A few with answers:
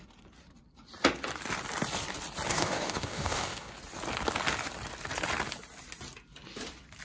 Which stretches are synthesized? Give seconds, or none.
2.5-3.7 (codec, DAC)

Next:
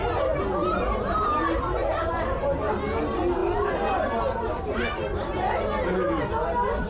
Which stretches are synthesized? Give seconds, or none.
0.6-2.5 (vocoder, BigVGAN v2)